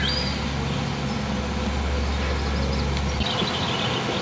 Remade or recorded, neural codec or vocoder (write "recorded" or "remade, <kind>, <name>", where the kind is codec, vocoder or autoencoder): recorded